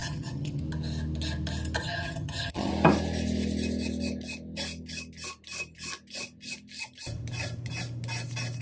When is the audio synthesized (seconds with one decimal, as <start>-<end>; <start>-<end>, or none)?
0.0-0.6; 1.8-2.7